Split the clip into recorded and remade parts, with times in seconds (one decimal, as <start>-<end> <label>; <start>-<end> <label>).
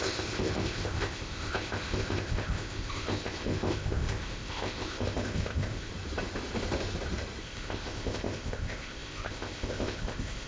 0.0-5.9 remade; 5.9-7.4 recorded; 7.4-10.5 remade